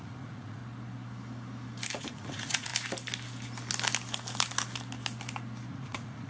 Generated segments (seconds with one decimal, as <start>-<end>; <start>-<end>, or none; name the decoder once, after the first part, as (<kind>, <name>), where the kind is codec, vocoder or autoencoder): 0.0-0.6 (vocoder, Vocos); 2.0-2.7; 5.7-6.3